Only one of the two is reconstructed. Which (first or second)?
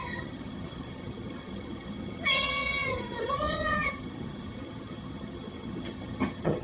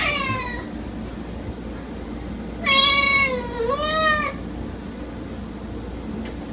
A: first